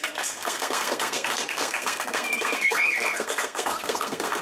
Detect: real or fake fake